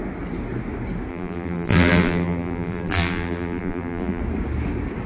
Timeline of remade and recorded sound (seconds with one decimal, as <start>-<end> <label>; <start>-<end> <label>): 0.0-1.1 recorded; 1.1-4.2 remade; 4.2-5.1 recorded